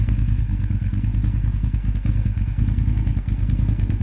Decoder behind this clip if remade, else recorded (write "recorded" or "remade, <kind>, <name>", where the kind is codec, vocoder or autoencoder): remade, codec, SNAC